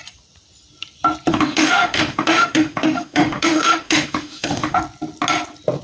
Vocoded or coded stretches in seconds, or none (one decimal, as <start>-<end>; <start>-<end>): 1.3-4.8